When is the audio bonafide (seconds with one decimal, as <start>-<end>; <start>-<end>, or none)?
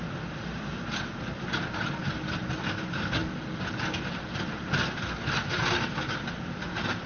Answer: 0.0-7.1